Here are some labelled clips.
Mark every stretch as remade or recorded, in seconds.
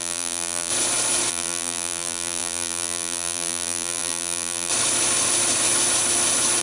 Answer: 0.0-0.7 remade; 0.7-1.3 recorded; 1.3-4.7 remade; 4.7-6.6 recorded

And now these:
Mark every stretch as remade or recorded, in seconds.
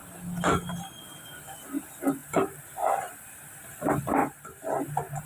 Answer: 0.0-1.2 remade; 1.2-2.2 recorded; 2.2-3.6 remade; 3.6-4.2 recorded; 4.2-4.8 remade; 4.8-5.3 recorded